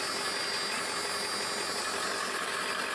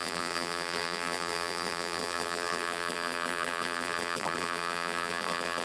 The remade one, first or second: second